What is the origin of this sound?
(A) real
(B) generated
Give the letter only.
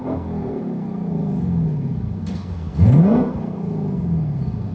B